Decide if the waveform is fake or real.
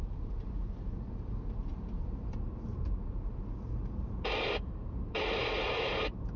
fake